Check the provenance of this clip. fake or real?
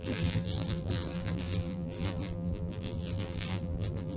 fake